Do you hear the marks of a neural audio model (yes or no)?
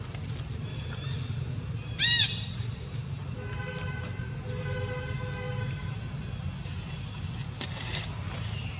no